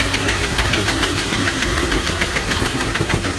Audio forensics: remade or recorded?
remade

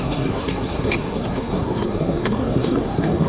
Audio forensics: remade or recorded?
remade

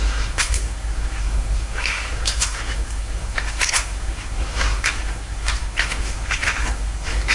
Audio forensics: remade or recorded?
remade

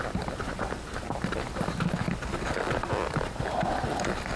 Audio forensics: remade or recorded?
recorded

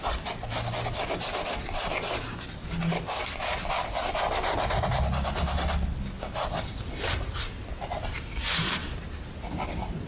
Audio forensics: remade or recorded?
recorded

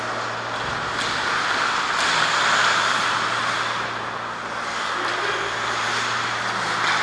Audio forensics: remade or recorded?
recorded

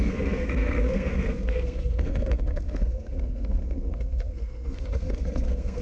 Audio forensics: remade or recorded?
remade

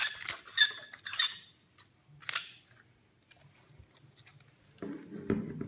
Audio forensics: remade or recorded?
recorded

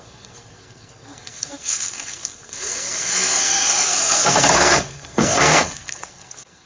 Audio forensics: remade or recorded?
remade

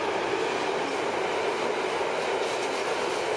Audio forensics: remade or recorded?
recorded